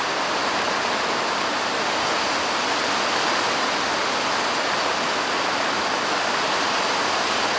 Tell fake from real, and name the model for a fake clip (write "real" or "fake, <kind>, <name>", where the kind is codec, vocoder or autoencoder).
real